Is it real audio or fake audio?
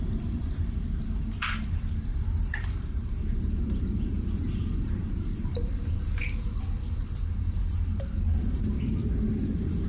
fake